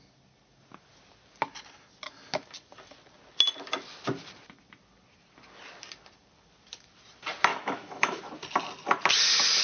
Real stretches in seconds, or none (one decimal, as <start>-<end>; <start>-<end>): 0.0-7.5; 8.2-9.6